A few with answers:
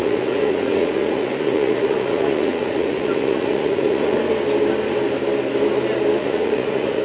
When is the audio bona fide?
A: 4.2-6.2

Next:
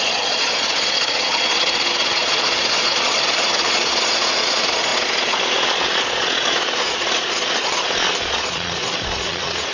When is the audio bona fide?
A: none

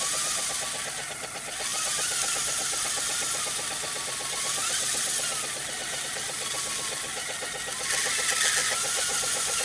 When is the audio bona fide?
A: 0.0-8.6

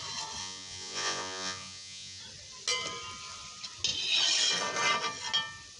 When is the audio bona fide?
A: 0.0-0.4; 2.2-5.8